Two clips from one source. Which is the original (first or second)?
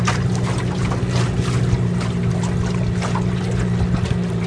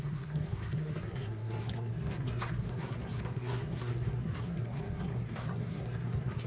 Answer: first